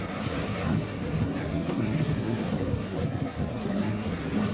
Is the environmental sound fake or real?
fake